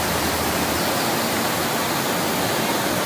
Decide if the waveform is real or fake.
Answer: real